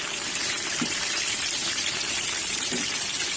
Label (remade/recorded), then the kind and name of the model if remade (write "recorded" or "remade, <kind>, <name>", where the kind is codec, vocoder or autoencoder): remade, vocoder, BigVGAN v2